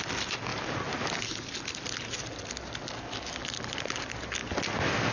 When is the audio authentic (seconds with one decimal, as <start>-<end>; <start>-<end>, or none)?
0.0-5.1